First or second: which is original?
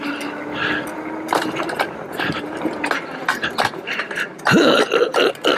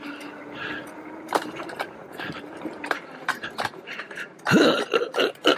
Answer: first